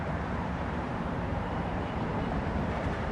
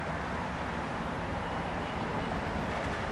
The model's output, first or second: first